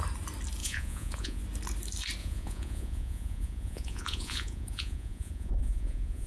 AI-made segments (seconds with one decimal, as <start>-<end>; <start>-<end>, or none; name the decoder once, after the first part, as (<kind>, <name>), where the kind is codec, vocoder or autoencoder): 0.6-1.4 (vocoder, Vocos); 2.2-6.3